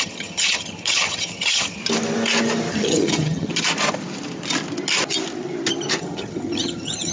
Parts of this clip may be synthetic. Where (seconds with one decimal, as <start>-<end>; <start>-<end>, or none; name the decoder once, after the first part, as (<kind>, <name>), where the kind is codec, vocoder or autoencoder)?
0.0-1.8 (vocoder, HiFi-GAN); 2.7-3.5; 6.0-7.1